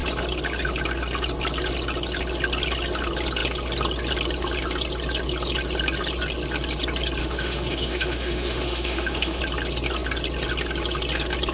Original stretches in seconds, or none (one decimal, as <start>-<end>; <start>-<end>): 0.0-7.2; 9.4-11.5